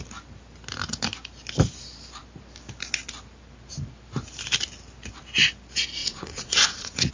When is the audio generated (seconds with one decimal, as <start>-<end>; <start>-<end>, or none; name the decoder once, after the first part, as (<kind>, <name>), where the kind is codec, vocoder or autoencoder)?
6.0-7.1 (vocoder, Vocos)